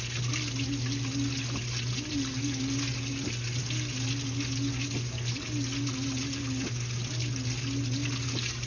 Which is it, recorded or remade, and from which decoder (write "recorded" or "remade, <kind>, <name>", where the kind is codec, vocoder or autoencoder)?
recorded